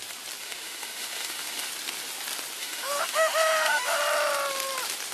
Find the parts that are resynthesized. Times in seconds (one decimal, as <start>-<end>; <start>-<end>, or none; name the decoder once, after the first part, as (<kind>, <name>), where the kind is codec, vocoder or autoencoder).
0.4-1.7 (autoencoder, DAC-VAE); 2.6-4.0